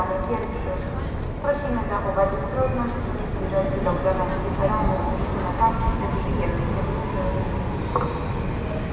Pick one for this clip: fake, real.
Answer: real